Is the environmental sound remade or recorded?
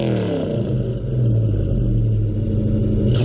recorded